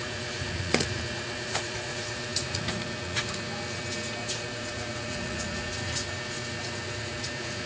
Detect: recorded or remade remade